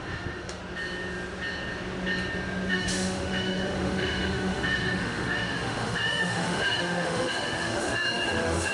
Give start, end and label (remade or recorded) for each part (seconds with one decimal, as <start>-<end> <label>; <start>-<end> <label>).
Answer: 0.0-0.6 remade; 0.6-2.7 recorded; 2.7-8.7 remade

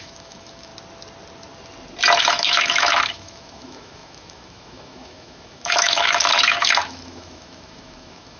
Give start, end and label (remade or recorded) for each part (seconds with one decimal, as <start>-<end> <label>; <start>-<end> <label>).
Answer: 0.0-0.7 remade; 0.7-2.2 recorded; 2.2-8.4 remade

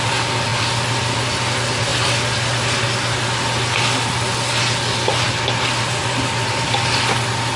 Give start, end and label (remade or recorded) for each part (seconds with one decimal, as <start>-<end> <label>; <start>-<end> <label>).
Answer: 0.0-7.6 recorded

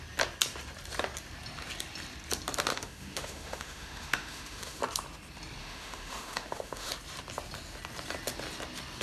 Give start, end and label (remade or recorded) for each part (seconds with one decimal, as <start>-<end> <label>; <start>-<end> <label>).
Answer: 0.0-2.7 recorded; 2.7-4.8 remade; 4.8-5.6 recorded; 5.6-6.9 remade; 6.9-9.0 recorded